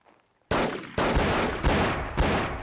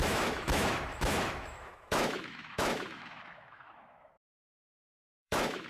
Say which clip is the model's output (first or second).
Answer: second